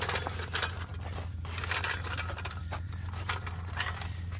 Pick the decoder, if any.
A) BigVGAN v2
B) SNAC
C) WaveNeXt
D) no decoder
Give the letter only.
D